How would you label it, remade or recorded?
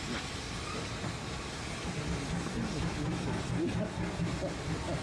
recorded